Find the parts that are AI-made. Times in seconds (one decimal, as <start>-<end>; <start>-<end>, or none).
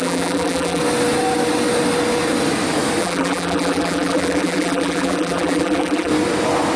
0.0-0.8; 3.0-6.1